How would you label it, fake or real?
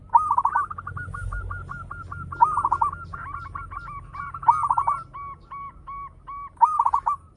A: real